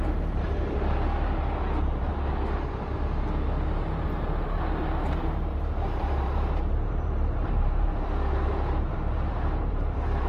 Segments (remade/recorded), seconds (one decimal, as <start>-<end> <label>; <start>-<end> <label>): 0.0-2.1 remade; 2.1-5.2 recorded; 5.2-10.3 remade